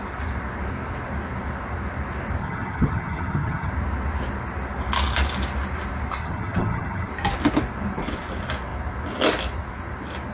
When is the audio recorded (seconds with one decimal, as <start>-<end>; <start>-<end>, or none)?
0.0-2.4; 3.7-6.2; 7.1-10.3